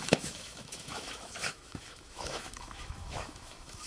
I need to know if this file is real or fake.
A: fake